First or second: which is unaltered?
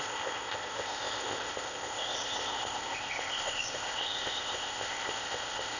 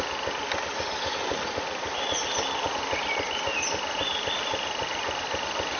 second